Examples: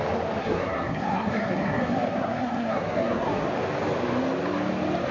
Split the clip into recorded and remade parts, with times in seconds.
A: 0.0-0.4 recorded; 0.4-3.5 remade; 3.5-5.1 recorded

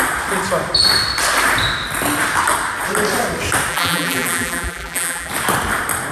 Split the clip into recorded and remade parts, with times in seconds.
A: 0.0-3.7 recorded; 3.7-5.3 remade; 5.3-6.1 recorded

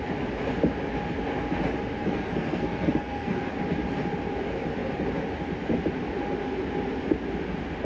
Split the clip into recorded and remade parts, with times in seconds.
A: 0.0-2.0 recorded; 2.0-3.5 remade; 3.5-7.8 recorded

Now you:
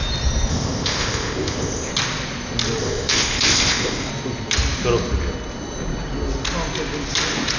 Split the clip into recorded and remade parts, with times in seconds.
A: 0.0-0.5 recorded; 0.5-1.9 remade; 1.9-2.8 recorded; 2.8-4.1 remade; 4.1-7.6 recorded

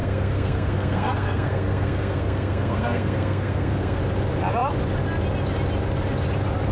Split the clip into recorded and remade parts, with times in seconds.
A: 0.0-4.0 remade; 4.0-6.7 recorded

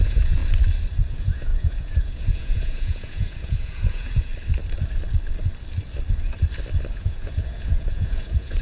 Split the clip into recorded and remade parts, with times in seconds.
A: 0.0-0.4 remade; 0.4-1.1 recorded; 1.1-4.3 remade; 4.3-6.9 recorded; 6.9-8.6 remade